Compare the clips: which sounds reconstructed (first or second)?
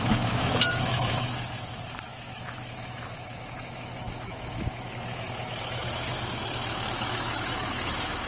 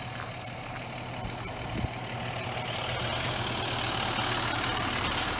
first